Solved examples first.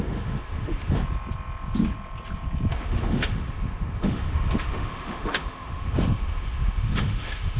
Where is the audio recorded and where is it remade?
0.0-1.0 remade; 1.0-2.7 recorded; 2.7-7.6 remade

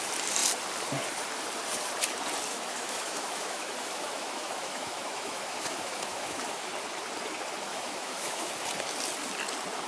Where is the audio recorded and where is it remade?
0.0-2.5 recorded; 2.5-6.7 remade; 6.7-7.7 recorded; 7.7-8.5 remade; 8.5-9.9 recorded